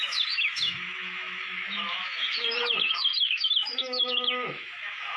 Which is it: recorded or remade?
remade